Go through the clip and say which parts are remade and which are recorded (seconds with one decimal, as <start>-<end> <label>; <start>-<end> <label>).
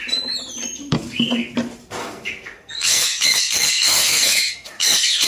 0.0-0.9 recorded; 0.9-1.5 remade; 1.5-2.0 recorded; 2.0-5.3 remade